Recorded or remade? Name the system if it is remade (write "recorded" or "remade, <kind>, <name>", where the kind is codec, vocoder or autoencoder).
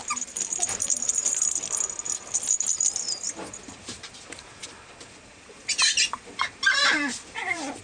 remade, vocoder, BigVGAN v2